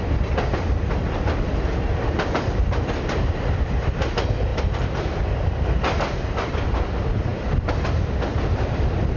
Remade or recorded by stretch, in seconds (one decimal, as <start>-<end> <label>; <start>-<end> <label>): 0.0-9.2 recorded